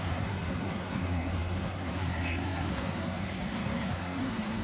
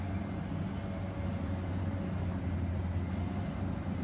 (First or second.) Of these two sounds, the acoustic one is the second